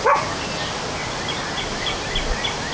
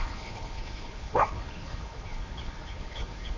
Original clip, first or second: first